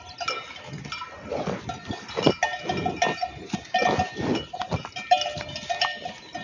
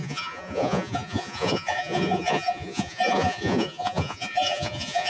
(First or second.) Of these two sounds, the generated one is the second